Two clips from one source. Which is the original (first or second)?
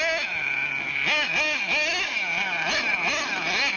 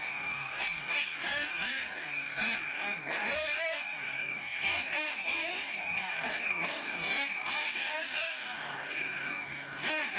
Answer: first